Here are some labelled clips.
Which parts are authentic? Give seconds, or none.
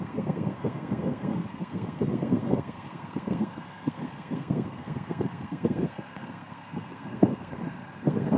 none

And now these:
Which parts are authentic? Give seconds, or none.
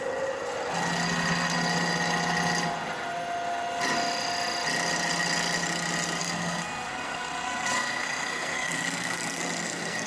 0.0-6.2